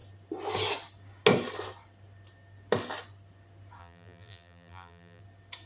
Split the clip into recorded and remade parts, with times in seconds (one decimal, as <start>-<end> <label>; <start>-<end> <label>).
0.0-3.8 recorded; 3.8-5.2 remade; 5.2-5.7 recorded